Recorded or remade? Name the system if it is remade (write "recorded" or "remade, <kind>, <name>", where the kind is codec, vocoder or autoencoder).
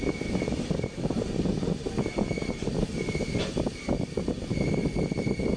recorded